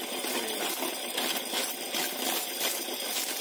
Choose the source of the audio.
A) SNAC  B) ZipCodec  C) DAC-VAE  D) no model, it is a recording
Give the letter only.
D